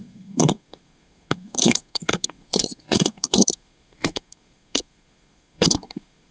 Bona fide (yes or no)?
no